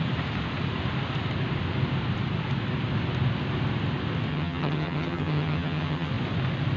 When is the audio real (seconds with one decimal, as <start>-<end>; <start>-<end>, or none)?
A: 0.0-4.3; 6.1-6.8